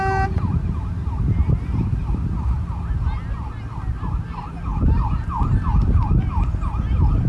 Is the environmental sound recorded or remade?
recorded